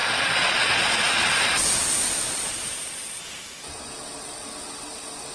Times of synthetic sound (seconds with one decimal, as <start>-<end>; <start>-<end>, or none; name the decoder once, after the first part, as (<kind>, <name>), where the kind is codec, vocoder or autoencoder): 0.0-3.2 (vocoder, Vocos)